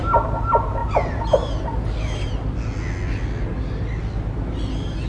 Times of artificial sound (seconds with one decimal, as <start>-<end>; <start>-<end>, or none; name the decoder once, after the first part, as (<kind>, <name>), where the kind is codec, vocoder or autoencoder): none